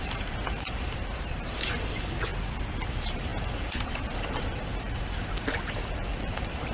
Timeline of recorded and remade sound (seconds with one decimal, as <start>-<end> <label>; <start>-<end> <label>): 0.0-2.3 remade; 2.3-2.9 recorded; 2.9-6.7 remade